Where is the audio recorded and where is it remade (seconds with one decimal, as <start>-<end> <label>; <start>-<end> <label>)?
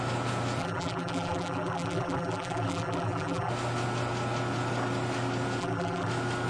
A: 0.0-0.6 recorded; 0.6-3.5 remade; 3.5-5.6 recorded; 5.6-6.1 remade; 6.1-6.5 recorded